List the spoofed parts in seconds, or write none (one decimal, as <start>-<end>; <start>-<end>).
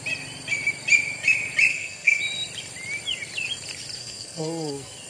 1.7-2.2; 4.0-5.1